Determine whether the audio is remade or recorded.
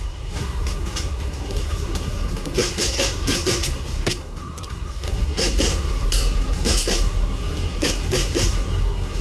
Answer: remade